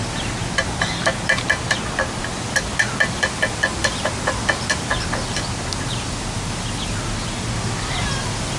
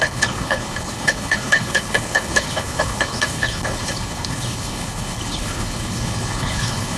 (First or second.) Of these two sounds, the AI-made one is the second